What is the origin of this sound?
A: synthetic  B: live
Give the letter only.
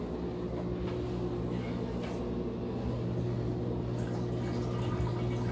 B